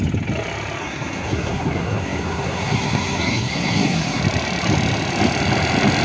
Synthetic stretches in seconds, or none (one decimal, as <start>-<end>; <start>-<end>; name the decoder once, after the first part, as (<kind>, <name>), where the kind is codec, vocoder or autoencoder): 0.8-4.2 (codec, SNAC)

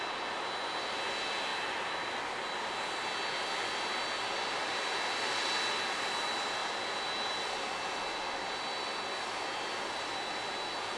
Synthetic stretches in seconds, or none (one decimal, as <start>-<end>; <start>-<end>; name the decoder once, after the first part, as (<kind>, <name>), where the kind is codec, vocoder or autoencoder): none

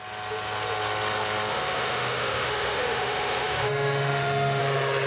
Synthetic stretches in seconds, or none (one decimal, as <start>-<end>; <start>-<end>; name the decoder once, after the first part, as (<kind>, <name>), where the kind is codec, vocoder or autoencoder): 1.5-4.6 (autoencoder, DAC-VAE)

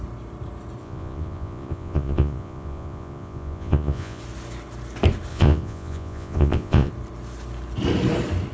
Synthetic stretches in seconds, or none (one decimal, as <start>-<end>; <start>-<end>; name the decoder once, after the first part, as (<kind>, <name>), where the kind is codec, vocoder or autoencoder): 0.8-4.2 (vocoder, Vocos); 5.3-6.9

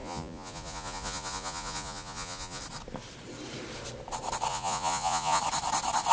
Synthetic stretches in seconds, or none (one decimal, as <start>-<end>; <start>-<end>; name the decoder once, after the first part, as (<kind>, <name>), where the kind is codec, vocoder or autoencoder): 0.0-2.6 (vocoder, Vocos); 4.5-5.4

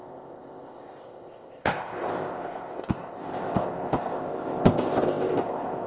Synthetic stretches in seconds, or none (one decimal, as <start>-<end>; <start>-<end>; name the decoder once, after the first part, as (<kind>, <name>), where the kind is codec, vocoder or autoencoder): 0.0-5.9 (codec, ZipCodec)

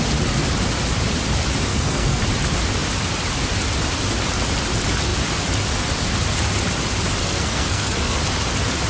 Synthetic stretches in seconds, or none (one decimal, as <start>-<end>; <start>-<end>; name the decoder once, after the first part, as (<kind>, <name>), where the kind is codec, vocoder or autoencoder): 1.7-2.2 (codec, SNAC); 7.2-8.2